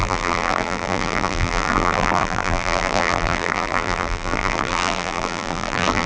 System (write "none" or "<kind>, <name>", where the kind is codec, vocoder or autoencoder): vocoder, BigVGAN v2